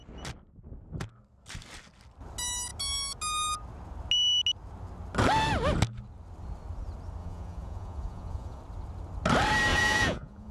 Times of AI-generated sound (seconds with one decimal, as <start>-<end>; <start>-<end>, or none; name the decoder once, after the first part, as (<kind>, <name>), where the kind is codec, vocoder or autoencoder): 7.2-8.6 (vocoder, Vocos); 9.7-10.5